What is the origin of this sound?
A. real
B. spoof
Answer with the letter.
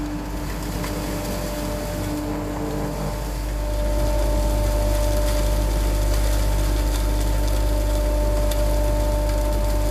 A